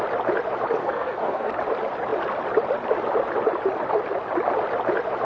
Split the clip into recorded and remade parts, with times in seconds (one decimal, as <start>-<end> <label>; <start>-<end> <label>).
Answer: 0.0-0.8 recorded; 0.8-1.5 remade; 1.5-5.2 recorded